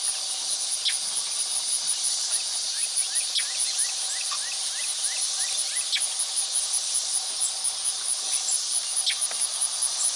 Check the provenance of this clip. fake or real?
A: real